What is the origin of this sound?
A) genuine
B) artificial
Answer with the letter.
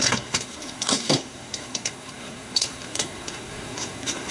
B